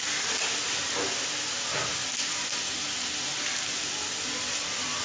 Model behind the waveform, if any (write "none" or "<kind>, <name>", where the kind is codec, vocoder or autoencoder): none